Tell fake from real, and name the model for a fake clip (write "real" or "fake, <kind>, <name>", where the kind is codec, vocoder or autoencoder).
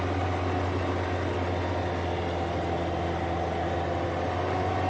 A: real